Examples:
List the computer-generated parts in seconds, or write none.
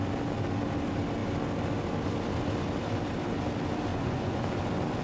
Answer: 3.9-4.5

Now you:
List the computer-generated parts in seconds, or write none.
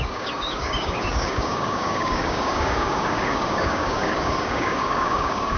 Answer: 0.0-5.6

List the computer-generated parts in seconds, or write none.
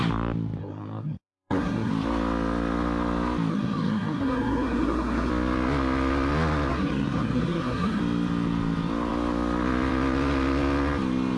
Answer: 0.6-1.9; 3.5-5.3; 6.7-8.0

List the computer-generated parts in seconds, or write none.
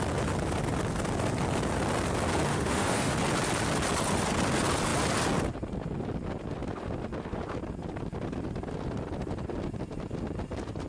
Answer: 2.5-3.1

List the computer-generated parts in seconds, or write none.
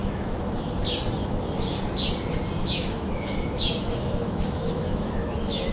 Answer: 0.0-0.7; 1.2-1.8; 2.6-5.7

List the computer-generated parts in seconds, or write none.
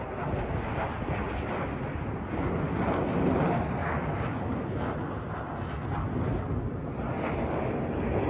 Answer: none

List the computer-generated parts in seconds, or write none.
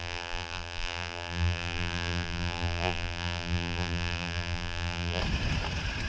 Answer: 0.0-5.2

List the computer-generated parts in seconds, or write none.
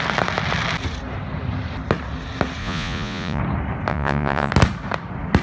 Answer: 2.6-3.4; 3.9-4.5